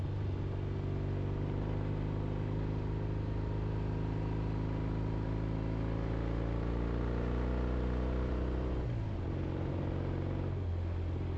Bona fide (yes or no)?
yes